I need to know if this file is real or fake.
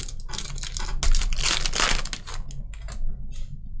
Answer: real